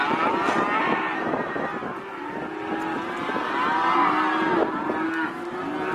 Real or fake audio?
real